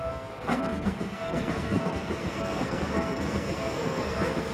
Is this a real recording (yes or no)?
no